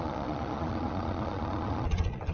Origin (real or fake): fake